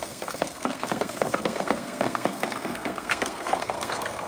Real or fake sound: fake